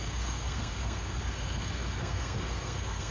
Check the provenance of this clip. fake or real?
fake